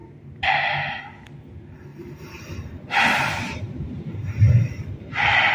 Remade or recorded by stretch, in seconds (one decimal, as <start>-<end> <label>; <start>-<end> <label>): 0.0-0.6 remade; 0.6-1.9 recorded; 1.9-5.5 remade